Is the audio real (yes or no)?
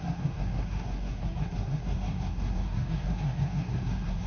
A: no